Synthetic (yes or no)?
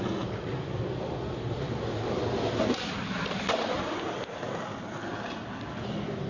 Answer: no